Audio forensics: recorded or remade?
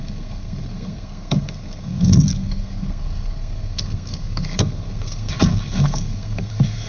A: remade